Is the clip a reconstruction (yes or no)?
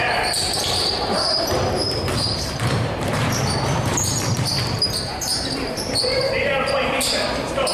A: yes